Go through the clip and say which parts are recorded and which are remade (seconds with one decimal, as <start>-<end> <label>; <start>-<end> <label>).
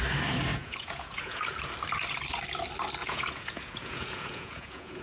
0.0-0.5 recorded; 0.5-1.6 remade; 1.6-3.0 recorded; 3.0-5.0 remade